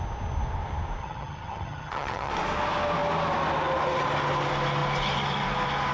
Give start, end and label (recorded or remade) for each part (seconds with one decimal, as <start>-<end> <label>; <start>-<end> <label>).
0.0-1.0 recorded; 1.0-2.3 remade; 2.3-5.9 recorded